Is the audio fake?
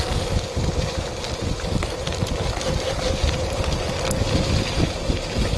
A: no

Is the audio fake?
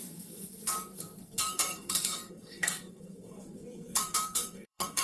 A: yes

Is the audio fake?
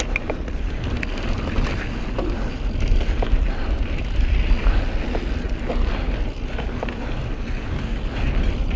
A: no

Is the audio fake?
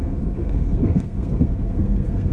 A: yes